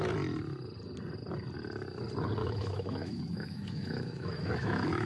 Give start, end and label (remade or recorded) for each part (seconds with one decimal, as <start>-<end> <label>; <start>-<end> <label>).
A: 0.0-2.4 recorded; 2.4-5.1 remade